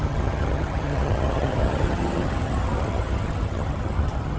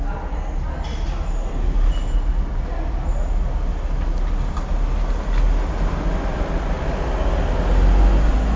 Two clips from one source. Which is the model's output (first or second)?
first